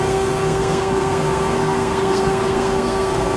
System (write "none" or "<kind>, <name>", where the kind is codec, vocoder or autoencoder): codec, SNAC